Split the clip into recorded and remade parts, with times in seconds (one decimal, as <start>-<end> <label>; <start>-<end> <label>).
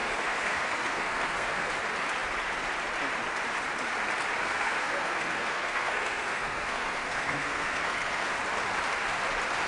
0.0-1.7 remade; 1.7-4.4 recorded; 4.4-8.3 remade; 8.3-9.7 recorded